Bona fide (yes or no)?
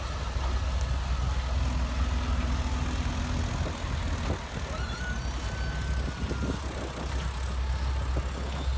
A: yes